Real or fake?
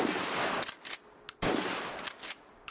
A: real